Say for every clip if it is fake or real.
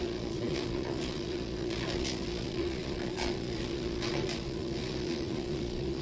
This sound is fake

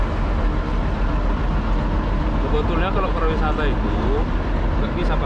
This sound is real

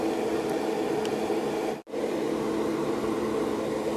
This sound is real